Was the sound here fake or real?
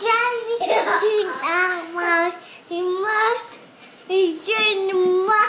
real